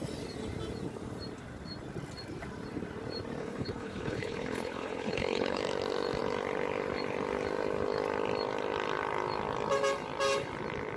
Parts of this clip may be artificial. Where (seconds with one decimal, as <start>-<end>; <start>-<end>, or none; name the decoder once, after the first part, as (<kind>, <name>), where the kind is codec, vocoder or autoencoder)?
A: 3.4-5.6 (codec, HILCodec)